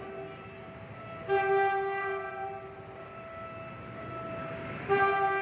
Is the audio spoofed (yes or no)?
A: no